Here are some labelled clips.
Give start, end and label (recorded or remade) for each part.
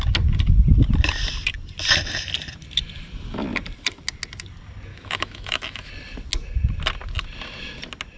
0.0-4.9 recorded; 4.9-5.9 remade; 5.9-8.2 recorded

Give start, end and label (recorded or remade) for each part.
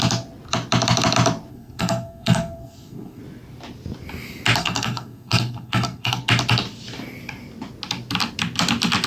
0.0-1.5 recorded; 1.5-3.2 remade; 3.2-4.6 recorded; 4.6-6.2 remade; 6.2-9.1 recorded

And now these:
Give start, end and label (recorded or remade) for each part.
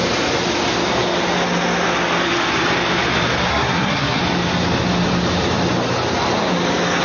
0.0-3.5 recorded; 3.5-4.2 remade; 4.2-7.0 recorded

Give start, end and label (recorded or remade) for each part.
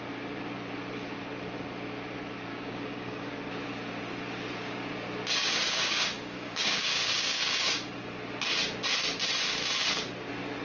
0.0-2.5 recorded; 2.5-3.3 remade; 3.3-5.4 recorded; 5.4-8.1 remade; 8.1-10.6 recorded